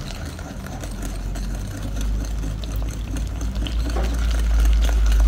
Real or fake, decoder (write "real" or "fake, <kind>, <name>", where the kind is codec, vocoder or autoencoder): real